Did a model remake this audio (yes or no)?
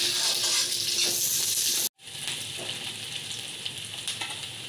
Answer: no